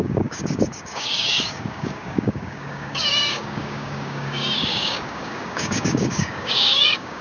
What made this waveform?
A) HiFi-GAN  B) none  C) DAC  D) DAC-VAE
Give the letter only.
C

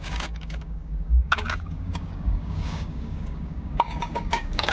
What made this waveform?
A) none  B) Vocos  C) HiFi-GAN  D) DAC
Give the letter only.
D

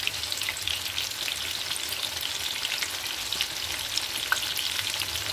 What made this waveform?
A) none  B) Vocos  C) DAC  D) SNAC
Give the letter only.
A